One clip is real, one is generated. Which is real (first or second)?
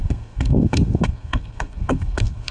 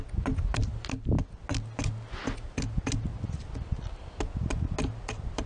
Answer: second